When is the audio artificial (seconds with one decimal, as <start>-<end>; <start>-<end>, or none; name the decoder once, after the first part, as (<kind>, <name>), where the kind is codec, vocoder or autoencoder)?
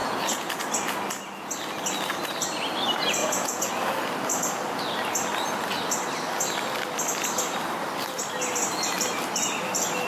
0.0-0.5 (vocoder, Vocos); 3.2-3.7